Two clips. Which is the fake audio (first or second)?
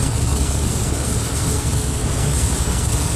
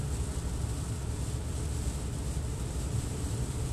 first